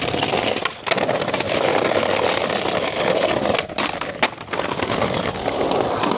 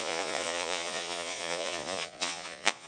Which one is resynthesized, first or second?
second